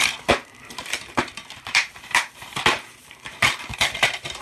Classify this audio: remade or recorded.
remade